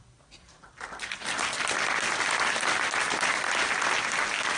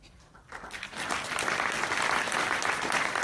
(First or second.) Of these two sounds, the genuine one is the first